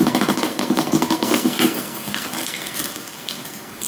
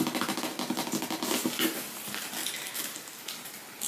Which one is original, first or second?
second